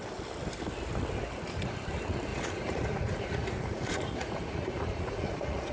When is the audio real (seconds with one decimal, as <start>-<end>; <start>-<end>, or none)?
0.0-2.3